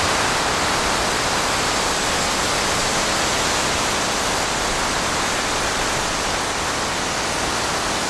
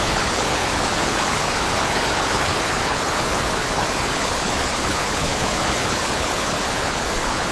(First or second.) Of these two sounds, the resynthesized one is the second